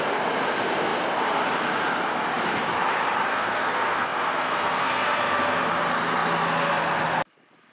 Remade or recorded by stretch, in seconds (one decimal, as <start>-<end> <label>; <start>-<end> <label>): 0.0-3.3 recorded; 3.3-5.2 remade; 5.2-7.7 recorded